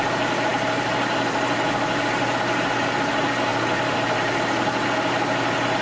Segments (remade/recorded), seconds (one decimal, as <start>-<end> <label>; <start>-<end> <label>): 0.0-3.5 recorded; 3.5-4.3 remade; 4.3-5.8 recorded